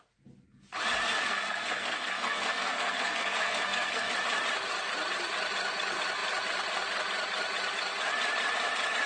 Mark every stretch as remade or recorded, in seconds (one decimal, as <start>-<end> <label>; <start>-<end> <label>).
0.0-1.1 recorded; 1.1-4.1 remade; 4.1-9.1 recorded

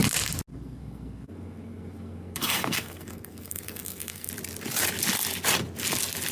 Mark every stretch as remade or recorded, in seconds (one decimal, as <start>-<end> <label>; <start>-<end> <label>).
0.0-0.5 recorded; 0.5-4.3 remade; 4.3-6.3 recorded

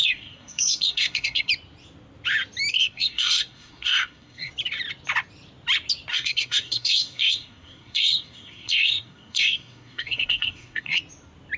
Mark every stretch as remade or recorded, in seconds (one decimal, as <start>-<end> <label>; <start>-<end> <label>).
0.0-1.5 remade; 1.5-2.7 recorded; 2.7-4.5 remade; 4.5-6.1 recorded; 6.1-11.0 remade; 11.0-11.6 recorded

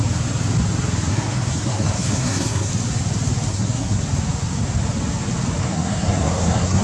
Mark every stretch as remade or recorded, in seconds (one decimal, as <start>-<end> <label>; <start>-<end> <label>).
0.0-1.1 recorded; 1.1-2.7 remade; 2.7-3.5 recorded; 3.5-4.0 remade; 4.0-5.6 recorded; 5.6-6.8 remade

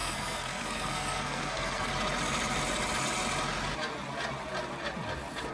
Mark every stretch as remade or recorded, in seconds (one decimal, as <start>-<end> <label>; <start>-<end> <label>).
0.0-1.9 remade; 1.9-5.5 recorded

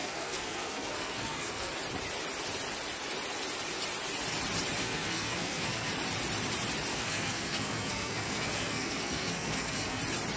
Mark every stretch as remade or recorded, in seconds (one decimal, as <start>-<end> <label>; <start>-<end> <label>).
0.0-1.7 remade; 1.7-4.8 recorded; 4.8-5.9 remade; 5.9-6.9 recorded; 6.9-10.0 remade; 10.0-10.4 recorded

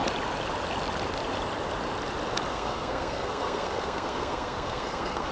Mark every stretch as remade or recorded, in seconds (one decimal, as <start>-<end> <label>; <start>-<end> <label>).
0.0-2.5 recorded; 2.5-5.3 remade

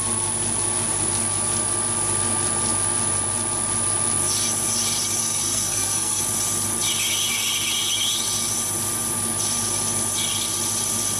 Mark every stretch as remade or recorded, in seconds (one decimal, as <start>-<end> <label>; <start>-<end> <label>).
0.0-5.2 recorded; 5.2-6.2 remade; 6.2-11.2 recorded